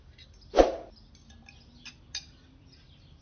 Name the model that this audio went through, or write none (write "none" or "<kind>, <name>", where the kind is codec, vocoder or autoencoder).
none